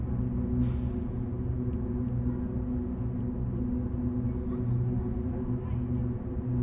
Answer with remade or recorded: recorded